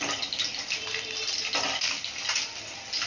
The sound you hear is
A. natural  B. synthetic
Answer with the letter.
A